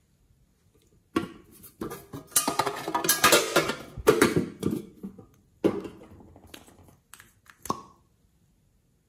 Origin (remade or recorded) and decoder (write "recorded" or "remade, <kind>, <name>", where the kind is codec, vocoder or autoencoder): recorded